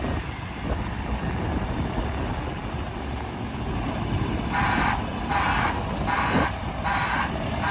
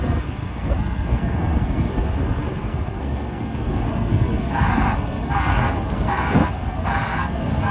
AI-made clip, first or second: second